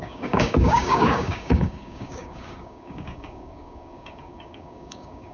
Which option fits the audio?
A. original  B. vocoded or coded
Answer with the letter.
B